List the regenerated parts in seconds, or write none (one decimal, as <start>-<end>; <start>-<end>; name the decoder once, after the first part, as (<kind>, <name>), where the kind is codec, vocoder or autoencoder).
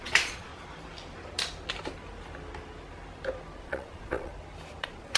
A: 0.0-0.5 (vocoder, Vocos); 3.6-4.3; 4.8-5.2